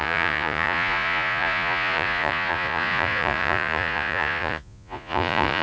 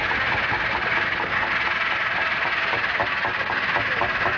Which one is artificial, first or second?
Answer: first